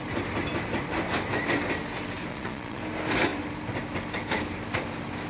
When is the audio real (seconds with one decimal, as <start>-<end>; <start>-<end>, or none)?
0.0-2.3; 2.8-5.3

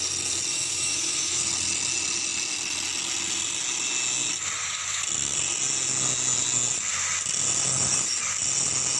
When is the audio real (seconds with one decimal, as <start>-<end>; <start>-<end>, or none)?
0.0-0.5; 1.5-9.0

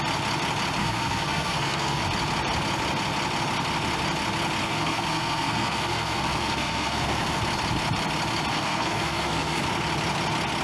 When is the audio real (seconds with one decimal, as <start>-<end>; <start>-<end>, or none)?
0.0-0.8; 2.0-4.6; 7.4-8.5; 9.6-10.6

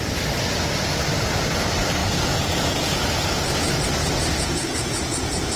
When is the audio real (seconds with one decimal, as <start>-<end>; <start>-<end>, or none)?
0.0-2.0; 3.0-4.0

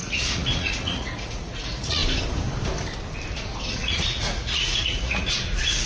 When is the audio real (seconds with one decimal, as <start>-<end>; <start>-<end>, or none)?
2.0-3.7

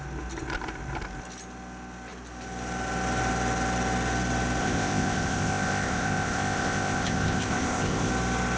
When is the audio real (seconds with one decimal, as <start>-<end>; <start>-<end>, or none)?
0.0-4.6; 8.1-8.6

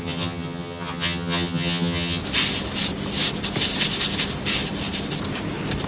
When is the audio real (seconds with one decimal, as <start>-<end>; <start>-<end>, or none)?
2.2-5.9

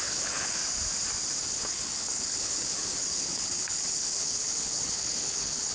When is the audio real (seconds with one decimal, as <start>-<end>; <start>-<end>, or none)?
0.6-1.4